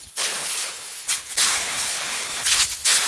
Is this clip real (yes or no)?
no